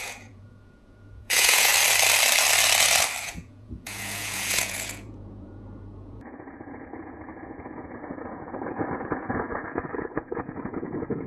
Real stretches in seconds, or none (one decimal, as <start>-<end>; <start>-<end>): 1.7-3.2